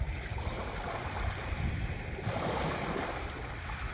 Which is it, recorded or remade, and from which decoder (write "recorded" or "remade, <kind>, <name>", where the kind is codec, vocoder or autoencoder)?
recorded